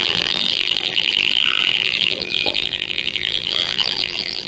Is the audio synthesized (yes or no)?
yes